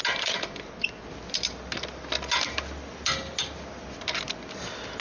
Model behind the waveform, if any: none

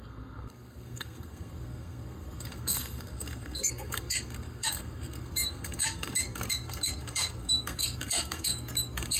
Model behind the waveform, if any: codec, SNAC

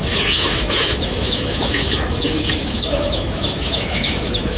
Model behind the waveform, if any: autoencoder, DAC-VAE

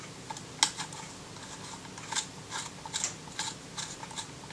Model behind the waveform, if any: none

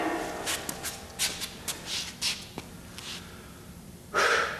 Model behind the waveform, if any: none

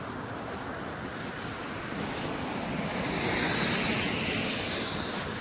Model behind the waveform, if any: none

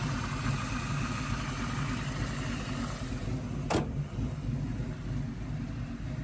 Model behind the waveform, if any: none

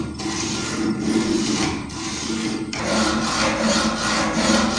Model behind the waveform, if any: none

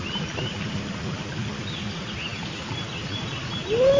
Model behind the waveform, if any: none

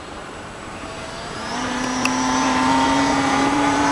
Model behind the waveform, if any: vocoder, BigVGAN v2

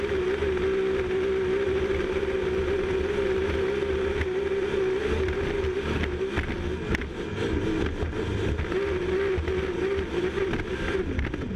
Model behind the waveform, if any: none